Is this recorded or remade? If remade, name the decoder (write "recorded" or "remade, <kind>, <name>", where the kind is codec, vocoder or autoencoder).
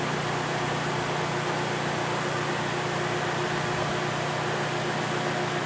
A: recorded